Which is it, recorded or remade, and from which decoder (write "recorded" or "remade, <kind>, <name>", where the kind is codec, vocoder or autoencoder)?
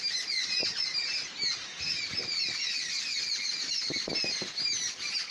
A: recorded